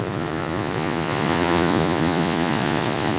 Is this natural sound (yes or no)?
no